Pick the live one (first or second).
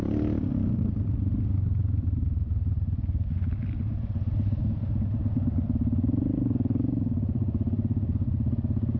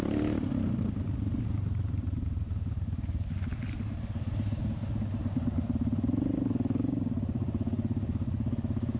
first